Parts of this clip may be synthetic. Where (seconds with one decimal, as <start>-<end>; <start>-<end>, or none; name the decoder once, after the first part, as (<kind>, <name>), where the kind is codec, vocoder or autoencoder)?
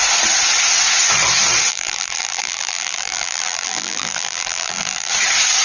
1.7-5.1 (vocoder, BigVGAN v2)